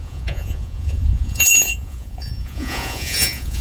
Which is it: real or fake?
fake